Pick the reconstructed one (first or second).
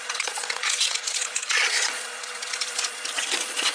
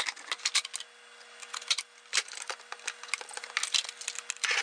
first